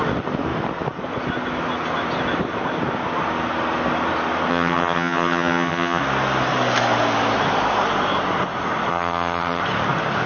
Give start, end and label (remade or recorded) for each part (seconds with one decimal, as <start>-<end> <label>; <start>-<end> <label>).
0.0-4.5 recorded; 4.5-6.0 remade; 6.0-8.9 recorded; 8.9-9.6 remade; 9.6-10.3 recorded